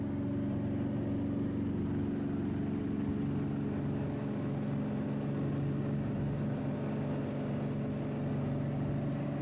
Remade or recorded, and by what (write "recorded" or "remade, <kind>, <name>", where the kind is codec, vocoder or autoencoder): recorded